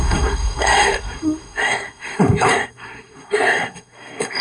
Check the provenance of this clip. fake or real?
fake